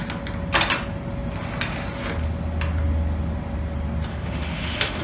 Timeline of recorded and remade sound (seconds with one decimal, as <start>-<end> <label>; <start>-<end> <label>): 0.0-4.1 recorded; 4.1-5.0 remade